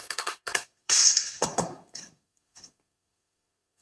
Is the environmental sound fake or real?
fake